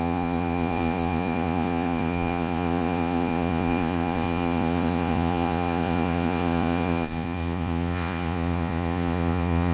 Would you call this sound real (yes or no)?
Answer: no